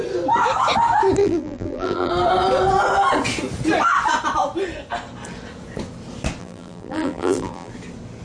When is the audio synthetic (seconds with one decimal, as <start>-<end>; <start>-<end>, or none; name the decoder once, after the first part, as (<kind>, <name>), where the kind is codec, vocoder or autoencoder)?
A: 1.2-2.1 (vocoder, BigVGAN v2); 6.4-7.7